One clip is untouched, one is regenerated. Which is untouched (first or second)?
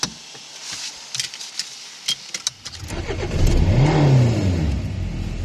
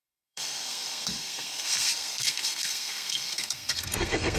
first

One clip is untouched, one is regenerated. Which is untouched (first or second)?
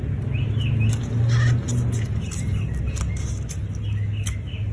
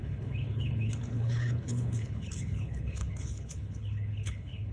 first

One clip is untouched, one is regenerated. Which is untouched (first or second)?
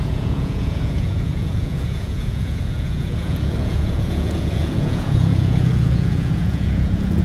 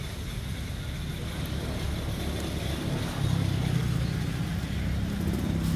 second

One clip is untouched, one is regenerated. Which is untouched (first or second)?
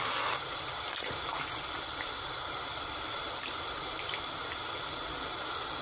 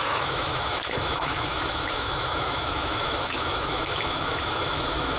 first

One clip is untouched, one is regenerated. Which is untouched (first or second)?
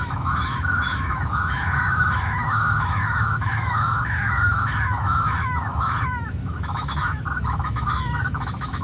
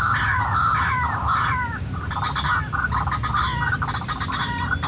second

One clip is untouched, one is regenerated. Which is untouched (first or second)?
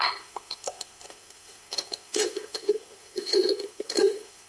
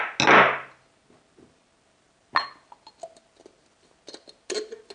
second